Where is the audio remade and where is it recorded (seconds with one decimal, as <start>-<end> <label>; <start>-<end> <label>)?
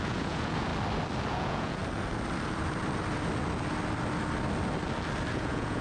0.0-0.7 remade; 0.7-1.3 recorded; 1.3-1.8 remade; 1.8-5.3 recorded; 5.3-5.8 remade